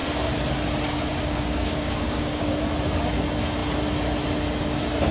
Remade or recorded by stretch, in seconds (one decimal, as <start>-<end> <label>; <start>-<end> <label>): 0.0-0.9 recorded; 0.9-2.6 remade; 2.6-5.1 recorded

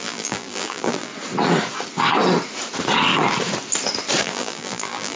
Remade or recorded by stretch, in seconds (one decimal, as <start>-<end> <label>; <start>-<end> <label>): 0.0-1.1 remade; 1.1-4.2 recorded; 4.2-5.2 remade

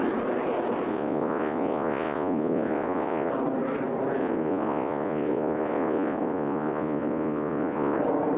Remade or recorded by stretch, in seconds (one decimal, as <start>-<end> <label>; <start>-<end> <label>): 0.0-0.9 recorded; 0.9-3.3 remade; 3.3-4.2 recorded; 4.2-8.0 remade; 8.0-8.4 recorded

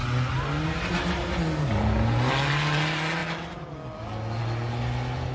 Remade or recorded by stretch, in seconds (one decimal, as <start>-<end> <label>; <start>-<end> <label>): 0.0-5.3 recorded

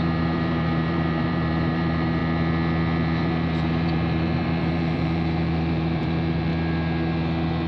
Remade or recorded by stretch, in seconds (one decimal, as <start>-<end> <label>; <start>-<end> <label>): 0.0-2.2 remade; 2.2-3.2 recorded; 3.2-6.5 remade; 6.5-7.7 recorded

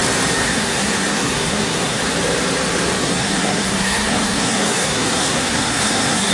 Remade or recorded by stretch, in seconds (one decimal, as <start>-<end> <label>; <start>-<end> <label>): 0.0-0.4 recorded; 0.4-2.0 remade; 2.0-3.0 recorded; 3.0-6.3 remade

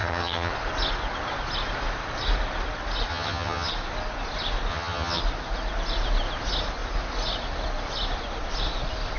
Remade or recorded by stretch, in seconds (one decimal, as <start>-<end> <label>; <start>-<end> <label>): 0.0-0.5 remade; 0.5-3.1 recorded; 3.1-3.7 remade; 3.7-4.7 recorded; 4.7-5.2 remade; 5.2-9.2 recorded

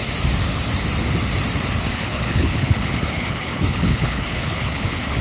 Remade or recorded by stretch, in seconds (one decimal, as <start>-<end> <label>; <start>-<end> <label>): 0.0-1.9 recorded; 1.9-5.2 remade